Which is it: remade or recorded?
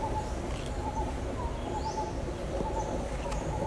recorded